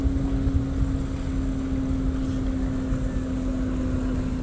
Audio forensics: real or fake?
real